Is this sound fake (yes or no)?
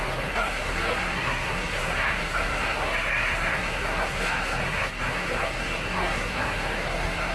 yes